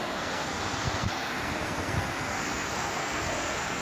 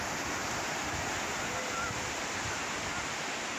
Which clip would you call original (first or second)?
second